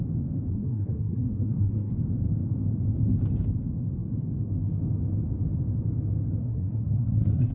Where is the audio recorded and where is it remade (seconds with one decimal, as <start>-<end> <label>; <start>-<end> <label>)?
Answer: 0.0-0.5 recorded; 0.5-1.9 remade; 1.9-6.4 recorded; 6.4-7.5 remade